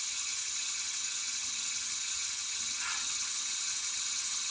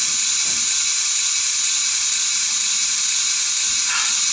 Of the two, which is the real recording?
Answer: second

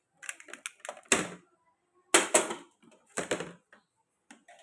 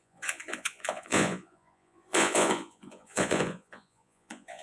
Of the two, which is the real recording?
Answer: first